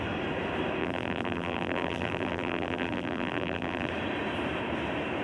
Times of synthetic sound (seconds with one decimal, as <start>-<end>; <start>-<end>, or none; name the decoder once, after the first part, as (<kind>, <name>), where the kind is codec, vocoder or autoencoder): 0.8-3.9 (vocoder, BigVGAN v2)